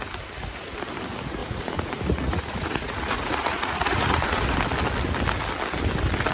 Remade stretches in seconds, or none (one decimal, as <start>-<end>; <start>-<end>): 1.4-4.6